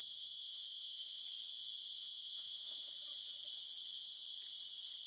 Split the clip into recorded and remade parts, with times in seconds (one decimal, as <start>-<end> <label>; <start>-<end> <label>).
0.0-1.2 remade; 1.2-2.0 recorded; 2.0-2.9 remade; 2.9-5.1 recorded